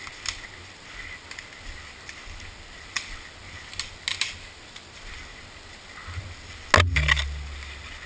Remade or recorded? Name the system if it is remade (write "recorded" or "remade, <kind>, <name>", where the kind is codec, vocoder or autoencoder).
recorded